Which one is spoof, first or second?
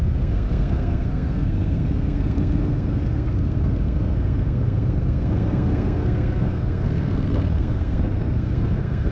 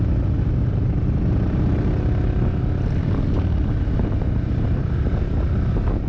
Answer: first